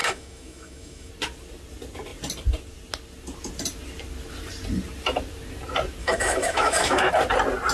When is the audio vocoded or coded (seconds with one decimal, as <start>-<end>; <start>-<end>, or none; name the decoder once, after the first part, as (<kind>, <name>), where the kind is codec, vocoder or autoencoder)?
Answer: 0.0-1.1 (autoencoder, DAC-VAE); 6.0-7.1